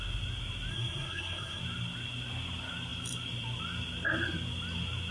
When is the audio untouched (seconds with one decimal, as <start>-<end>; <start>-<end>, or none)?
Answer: 0.0-0.7; 1.6-5.1